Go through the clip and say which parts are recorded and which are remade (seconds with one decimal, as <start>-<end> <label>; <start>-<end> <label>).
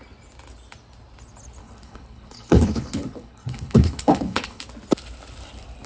0.0-1.6 recorded; 1.6-4.6 remade; 4.6-5.9 recorded